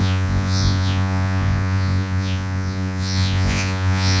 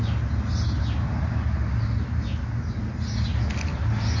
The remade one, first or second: first